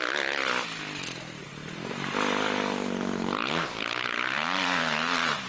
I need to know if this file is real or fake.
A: real